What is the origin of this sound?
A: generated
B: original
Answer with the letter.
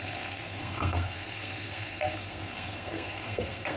A